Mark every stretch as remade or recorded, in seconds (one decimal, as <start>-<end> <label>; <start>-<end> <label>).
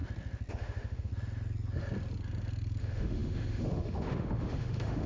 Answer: 0.0-0.5 recorded; 0.5-1.1 remade; 1.1-2.8 recorded; 2.8-5.1 remade